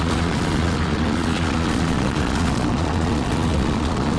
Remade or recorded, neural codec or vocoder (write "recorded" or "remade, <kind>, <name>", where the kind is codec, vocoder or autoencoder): remade, vocoder, Vocos